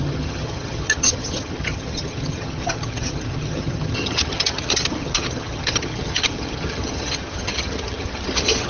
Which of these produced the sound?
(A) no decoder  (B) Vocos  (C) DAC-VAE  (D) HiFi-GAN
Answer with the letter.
D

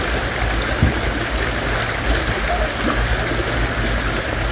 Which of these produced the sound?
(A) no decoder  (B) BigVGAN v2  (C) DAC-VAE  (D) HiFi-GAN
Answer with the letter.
A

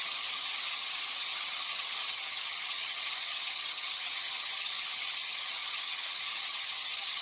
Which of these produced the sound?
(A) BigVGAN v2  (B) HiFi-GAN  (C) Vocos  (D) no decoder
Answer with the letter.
B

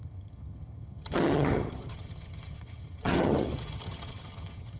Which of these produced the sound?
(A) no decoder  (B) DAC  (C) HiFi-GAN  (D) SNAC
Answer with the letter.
C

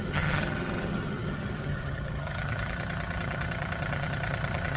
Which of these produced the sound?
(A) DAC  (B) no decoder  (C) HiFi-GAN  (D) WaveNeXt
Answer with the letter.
C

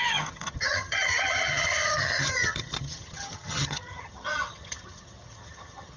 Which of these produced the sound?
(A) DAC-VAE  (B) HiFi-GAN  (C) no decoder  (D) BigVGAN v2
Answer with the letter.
B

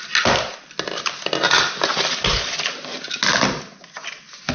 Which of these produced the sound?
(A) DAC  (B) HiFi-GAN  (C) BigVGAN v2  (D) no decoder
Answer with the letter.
D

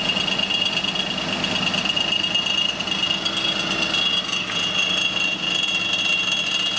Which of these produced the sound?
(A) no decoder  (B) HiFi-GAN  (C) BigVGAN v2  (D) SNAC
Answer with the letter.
A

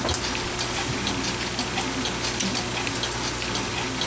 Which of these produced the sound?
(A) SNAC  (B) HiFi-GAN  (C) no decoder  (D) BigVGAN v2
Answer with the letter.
C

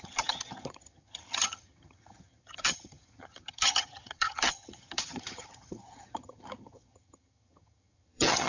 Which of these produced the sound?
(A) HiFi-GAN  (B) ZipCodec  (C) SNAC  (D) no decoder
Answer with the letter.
A